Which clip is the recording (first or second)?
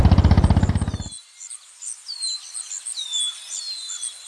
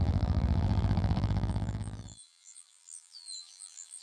first